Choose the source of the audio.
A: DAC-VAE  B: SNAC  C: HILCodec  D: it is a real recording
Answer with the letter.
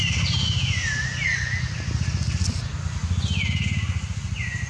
D